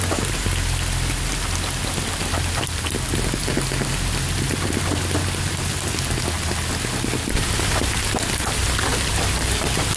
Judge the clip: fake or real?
real